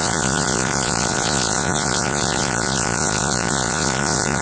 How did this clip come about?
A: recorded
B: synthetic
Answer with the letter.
B